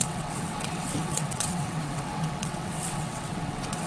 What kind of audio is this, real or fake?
fake